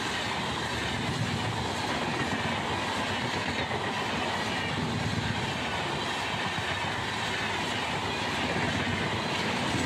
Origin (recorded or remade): recorded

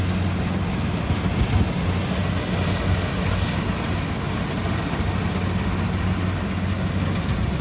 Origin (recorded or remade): recorded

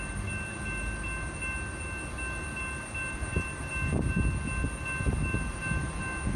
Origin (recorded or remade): recorded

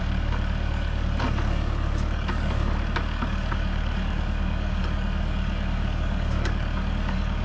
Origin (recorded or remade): remade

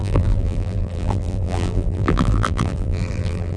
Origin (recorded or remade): remade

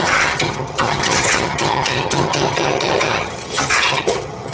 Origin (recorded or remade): remade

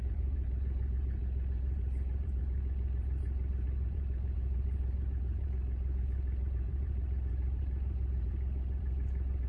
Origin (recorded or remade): remade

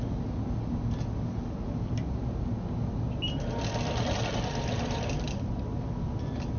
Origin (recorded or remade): recorded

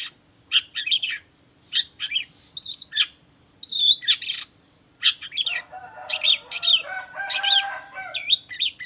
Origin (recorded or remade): recorded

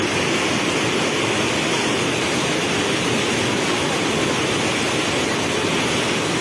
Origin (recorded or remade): recorded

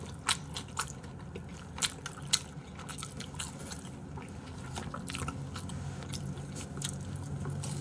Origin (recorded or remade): recorded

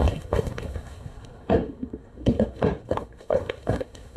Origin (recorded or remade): remade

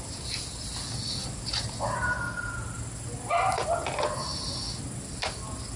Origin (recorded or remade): recorded